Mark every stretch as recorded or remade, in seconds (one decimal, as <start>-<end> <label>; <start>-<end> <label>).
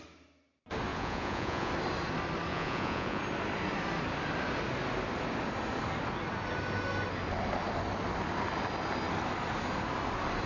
0.0-0.9 recorded; 0.9-1.7 remade; 1.7-2.5 recorded; 2.5-3.2 remade; 3.2-10.5 recorded